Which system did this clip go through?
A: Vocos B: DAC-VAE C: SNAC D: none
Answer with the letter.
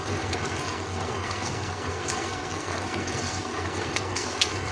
C